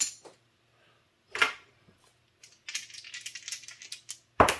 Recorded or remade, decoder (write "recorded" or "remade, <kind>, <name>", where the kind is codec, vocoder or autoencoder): recorded